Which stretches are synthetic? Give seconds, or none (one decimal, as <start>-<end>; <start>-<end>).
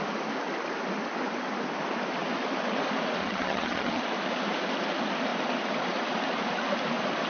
3.2-4.0